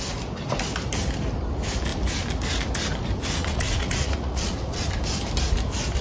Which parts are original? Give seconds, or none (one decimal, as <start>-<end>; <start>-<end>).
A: 0.0-3.4; 4.8-6.0